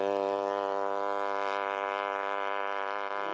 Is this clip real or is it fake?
real